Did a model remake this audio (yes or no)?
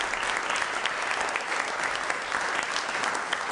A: no